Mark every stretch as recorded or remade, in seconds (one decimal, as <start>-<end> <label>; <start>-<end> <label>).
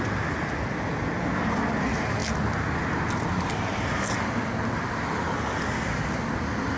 0.0-6.8 recorded